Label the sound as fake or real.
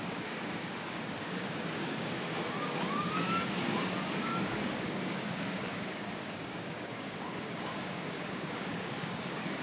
fake